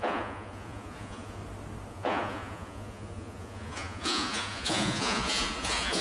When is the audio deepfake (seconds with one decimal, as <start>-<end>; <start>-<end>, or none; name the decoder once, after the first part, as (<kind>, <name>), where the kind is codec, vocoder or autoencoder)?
0.0-1.4 (vocoder, Vocos); 1.9-6.0